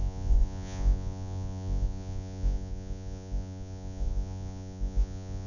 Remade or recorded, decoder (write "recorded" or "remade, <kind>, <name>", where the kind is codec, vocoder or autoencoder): remade, vocoder, Vocos